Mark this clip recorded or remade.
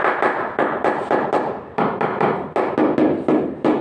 recorded